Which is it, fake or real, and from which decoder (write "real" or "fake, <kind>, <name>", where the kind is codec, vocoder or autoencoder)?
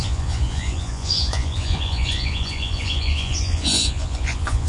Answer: fake, vocoder, Vocos